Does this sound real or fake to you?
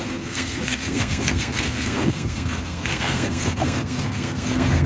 fake